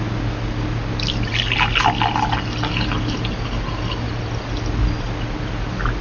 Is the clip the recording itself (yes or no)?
yes